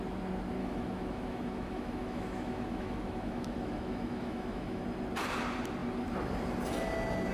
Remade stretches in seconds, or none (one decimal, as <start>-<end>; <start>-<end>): 0.6-4.8